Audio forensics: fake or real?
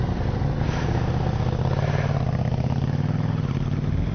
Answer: real